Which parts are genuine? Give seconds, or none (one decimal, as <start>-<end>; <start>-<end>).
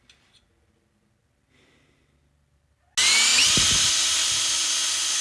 0.0-5.2